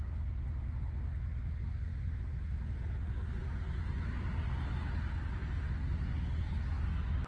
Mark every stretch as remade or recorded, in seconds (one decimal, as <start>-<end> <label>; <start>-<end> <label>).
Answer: 0.0-7.3 recorded